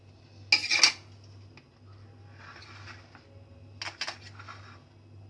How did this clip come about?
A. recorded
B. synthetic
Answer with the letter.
A